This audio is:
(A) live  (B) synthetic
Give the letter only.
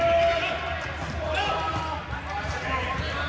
A